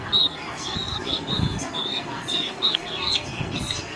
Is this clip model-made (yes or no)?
yes